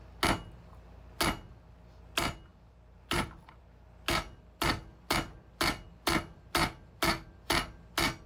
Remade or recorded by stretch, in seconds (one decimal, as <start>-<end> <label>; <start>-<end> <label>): 0.0-2.5 recorded; 2.5-3.6 remade; 3.6-8.3 recorded